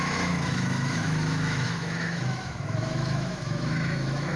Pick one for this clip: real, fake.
fake